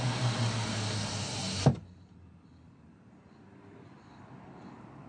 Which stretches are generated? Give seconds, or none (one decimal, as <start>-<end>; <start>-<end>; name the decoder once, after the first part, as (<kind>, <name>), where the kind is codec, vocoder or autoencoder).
none